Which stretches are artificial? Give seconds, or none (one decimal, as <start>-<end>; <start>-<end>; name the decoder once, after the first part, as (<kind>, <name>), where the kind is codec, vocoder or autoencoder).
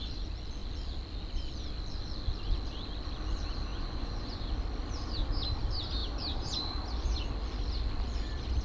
3.7-4.4 (vocoder, Vocos)